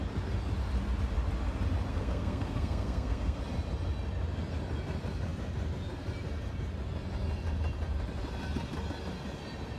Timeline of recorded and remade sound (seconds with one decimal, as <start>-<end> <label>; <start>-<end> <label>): 0.0-1.9 recorded; 1.9-3.4 remade; 3.4-9.8 recorded